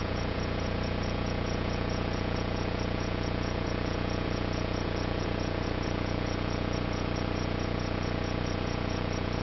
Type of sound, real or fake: fake